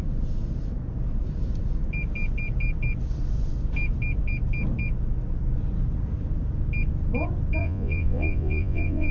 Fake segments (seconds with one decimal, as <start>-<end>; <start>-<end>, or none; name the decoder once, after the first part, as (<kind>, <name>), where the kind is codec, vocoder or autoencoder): 7.6-9.1 (vocoder, Vocos)